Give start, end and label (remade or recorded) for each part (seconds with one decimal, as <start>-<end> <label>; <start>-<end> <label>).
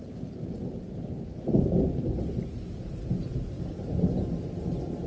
0.0-5.1 recorded